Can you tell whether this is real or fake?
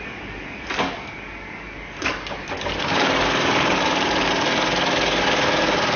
fake